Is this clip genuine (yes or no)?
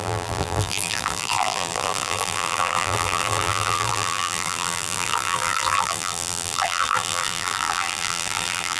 no